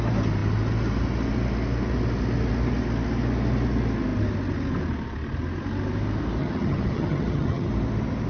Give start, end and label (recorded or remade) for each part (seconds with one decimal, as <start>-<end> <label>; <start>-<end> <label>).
0.0-6.4 recorded; 6.4-7.7 remade; 7.7-8.3 recorded